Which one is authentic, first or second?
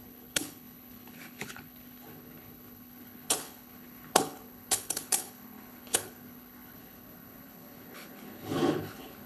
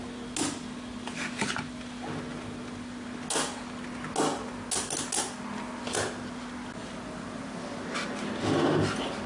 second